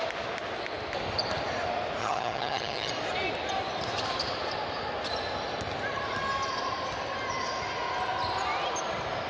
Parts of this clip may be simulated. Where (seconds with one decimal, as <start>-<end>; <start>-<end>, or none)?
2.0-2.9